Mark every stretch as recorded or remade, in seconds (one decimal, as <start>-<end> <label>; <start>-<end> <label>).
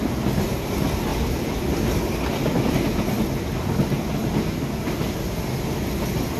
0.0-6.4 recorded